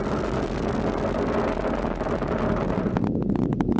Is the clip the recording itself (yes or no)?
yes